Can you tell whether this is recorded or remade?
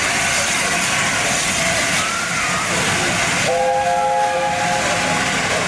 recorded